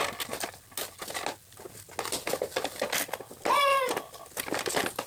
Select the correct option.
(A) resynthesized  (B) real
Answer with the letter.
B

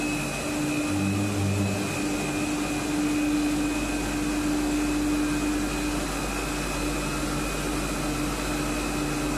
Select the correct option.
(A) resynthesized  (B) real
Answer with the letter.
B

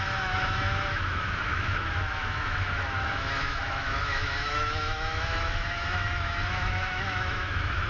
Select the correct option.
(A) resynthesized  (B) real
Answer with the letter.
A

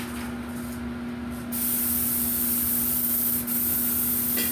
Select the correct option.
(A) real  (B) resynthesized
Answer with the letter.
A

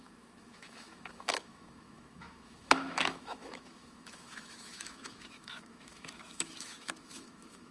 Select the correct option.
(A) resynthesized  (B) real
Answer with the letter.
A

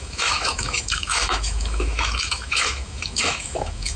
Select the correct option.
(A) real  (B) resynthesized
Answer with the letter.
B